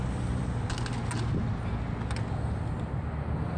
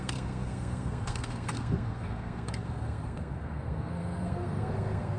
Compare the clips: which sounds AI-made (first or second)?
second